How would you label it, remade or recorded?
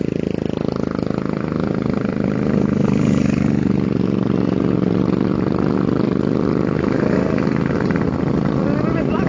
recorded